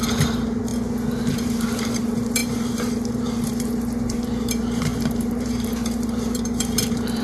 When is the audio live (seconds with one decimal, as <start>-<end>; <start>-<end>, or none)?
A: 0.7-1.3